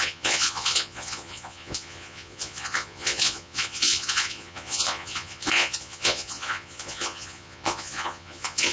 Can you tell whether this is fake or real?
fake